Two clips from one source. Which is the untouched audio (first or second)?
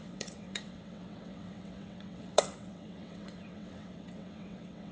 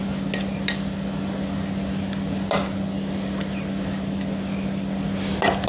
second